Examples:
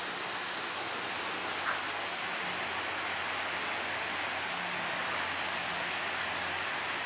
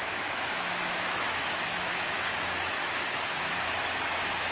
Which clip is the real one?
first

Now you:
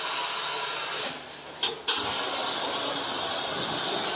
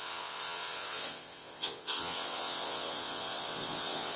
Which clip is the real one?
first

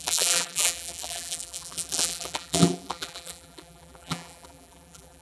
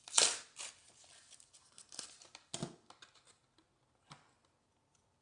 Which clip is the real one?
second